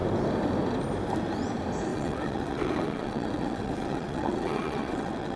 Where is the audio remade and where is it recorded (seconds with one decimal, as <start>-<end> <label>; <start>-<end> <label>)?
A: 0.0-1.9 recorded; 1.9-5.4 remade